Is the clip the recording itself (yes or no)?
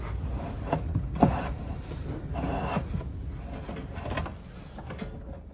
yes